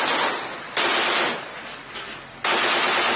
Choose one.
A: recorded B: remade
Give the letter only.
A